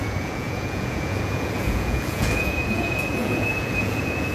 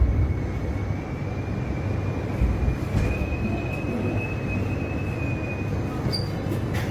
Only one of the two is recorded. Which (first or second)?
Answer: second